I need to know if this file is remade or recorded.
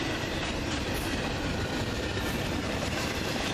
remade